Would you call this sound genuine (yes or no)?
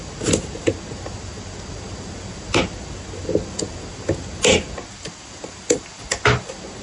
yes